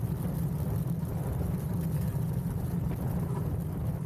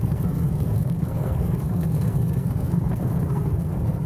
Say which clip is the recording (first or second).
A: first